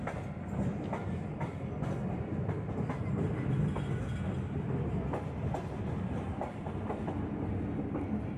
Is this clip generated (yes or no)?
no